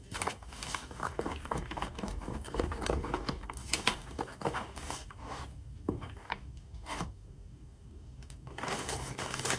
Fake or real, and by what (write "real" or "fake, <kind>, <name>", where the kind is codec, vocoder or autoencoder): fake, codec, DAC